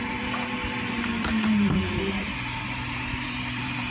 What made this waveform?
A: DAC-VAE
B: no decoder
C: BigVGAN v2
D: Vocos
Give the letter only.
C